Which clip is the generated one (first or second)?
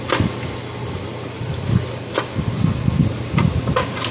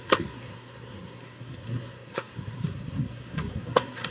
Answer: second